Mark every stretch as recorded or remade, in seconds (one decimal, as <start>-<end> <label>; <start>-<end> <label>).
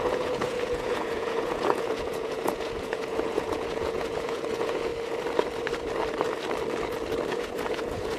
0.0-4.9 remade; 4.9-7.3 recorded; 7.3-8.2 remade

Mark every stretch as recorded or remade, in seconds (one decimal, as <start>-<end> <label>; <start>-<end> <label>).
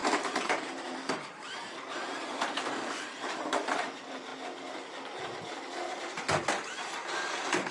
0.0-4.3 remade; 4.3-7.3 recorded; 7.3-7.7 remade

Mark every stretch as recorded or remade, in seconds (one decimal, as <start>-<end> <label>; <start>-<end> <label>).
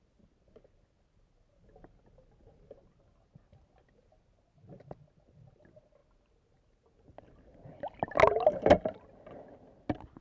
0.0-10.2 recorded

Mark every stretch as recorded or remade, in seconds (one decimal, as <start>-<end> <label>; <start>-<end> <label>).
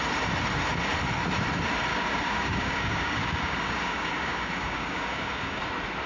0.0-1.9 recorded; 1.9-5.6 remade; 5.6-6.1 recorded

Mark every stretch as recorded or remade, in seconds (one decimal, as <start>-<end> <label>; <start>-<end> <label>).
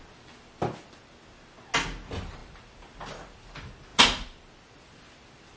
0.0-5.6 recorded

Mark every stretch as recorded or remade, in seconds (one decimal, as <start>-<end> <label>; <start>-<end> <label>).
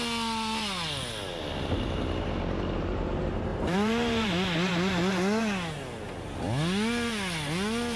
0.0-3.5 recorded; 3.5-4.3 remade; 4.3-8.0 recorded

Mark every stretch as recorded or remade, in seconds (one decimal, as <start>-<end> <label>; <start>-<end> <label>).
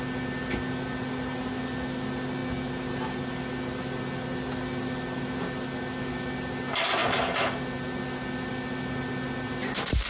0.0-10.1 recorded